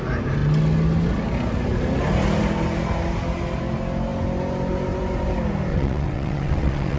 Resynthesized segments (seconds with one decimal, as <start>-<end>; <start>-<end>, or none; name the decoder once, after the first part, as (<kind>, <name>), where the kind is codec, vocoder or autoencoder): 5.7-7.0 (vocoder, WaveNeXt)